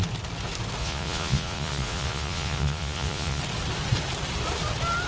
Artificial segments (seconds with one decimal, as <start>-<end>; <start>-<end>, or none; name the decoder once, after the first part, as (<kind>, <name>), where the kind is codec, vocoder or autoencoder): 0.8-3.4 (vocoder, Vocos)